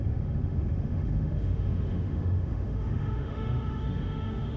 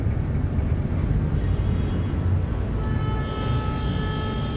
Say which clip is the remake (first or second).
first